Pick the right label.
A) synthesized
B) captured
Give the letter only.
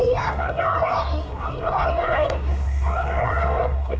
A